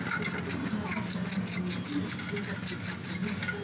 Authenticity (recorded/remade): recorded